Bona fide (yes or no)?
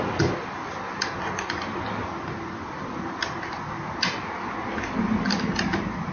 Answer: yes